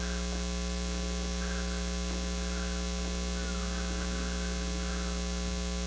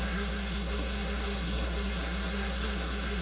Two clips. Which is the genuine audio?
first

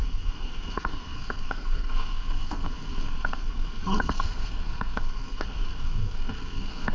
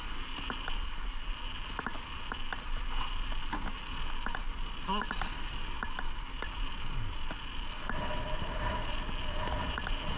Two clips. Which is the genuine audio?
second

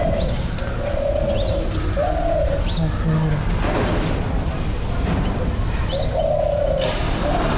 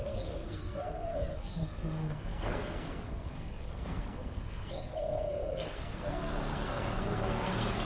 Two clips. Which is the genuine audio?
first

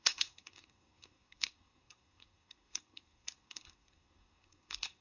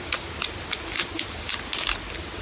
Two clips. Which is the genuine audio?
second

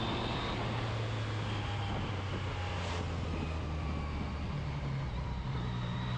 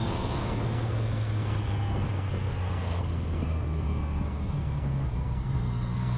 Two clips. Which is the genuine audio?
first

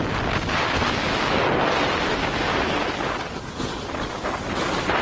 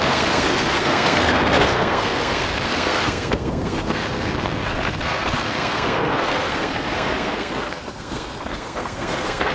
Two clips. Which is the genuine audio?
first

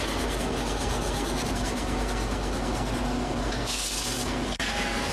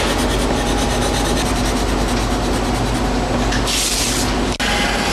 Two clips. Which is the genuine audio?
second